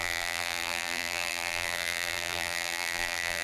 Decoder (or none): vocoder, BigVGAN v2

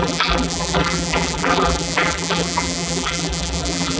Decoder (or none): vocoder, BigVGAN v2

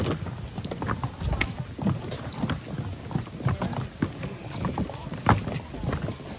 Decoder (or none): none